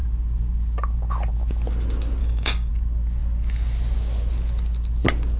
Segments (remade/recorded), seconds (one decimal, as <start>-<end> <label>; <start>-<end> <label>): 0.0-2.2 recorded; 2.2-2.7 remade; 2.7-5.4 recorded